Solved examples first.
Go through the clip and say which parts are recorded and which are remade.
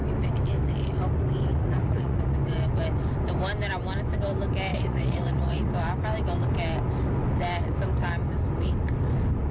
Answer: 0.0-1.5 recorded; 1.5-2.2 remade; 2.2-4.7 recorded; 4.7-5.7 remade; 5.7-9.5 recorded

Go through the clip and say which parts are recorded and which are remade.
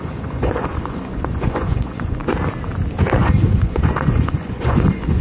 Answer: 0.0-2.2 remade; 2.2-3.2 recorded; 3.2-5.2 remade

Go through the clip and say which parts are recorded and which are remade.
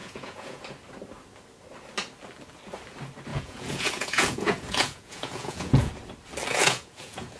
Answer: 0.0-0.6 remade; 0.6-3.3 recorded; 3.3-5.9 remade; 5.9-6.5 recorded; 6.5-7.4 remade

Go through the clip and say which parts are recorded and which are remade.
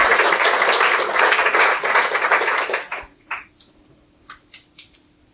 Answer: 0.0-0.6 remade; 0.6-1.4 recorded; 1.4-3.5 remade; 3.5-5.3 recorded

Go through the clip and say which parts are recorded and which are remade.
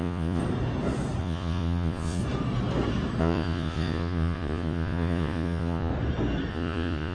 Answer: 0.0-0.4 remade; 0.4-1.2 recorded; 1.2-2.2 remade; 2.2-3.2 recorded; 3.2-5.9 remade; 5.9-6.5 recorded; 6.5-7.1 remade